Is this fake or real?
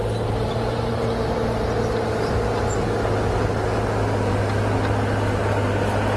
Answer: real